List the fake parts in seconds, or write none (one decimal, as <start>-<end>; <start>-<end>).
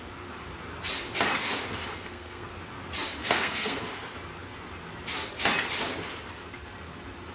1.9-2.5; 3.2-3.8